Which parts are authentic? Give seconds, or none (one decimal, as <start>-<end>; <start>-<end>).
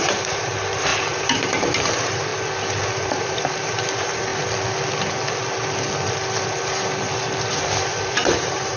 2.3-3.1; 4.3-7.9